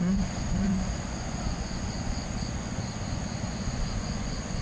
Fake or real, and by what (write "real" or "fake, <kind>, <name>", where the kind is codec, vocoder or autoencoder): fake, vocoder, Vocos